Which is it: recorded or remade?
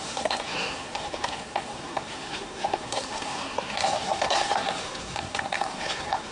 remade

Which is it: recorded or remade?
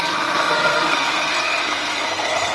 remade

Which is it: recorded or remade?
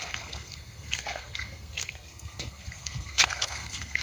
remade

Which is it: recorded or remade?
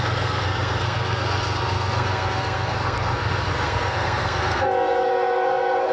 remade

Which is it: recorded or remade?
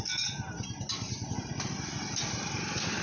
recorded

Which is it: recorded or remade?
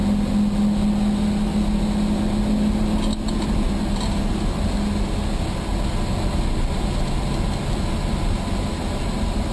recorded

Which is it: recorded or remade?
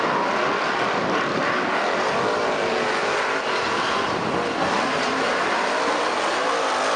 recorded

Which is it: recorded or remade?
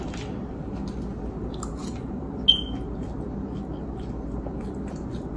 recorded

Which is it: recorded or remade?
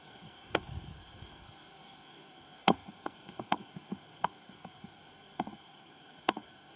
remade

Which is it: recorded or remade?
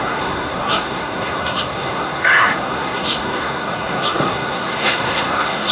remade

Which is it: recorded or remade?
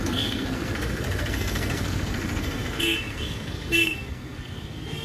remade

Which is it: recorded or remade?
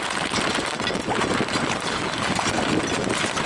recorded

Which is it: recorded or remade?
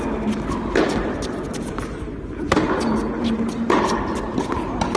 recorded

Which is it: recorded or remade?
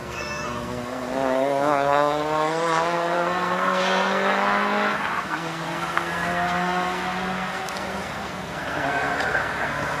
remade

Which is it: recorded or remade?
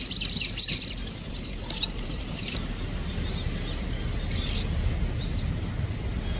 recorded